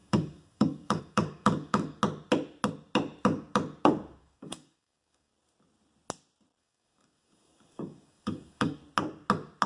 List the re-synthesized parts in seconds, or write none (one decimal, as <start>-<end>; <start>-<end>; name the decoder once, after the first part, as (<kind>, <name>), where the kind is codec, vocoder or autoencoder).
0.0-2.0 (codec, DAC); 4.2-5.3; 6.6-8.8